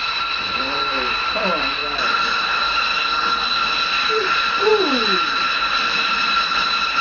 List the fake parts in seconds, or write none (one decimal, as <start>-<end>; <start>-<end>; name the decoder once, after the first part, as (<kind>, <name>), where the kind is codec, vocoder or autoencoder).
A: 0.0-1.8 (vocoder, BigVGAN v2); 4.2-7.0